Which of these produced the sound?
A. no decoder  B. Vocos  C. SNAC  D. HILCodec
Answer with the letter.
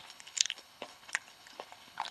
D